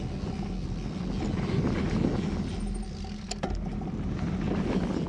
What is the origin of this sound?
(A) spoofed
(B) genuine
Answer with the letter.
B